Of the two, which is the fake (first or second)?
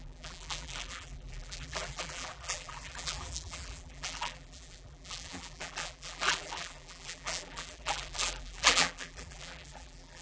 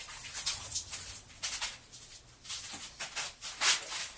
first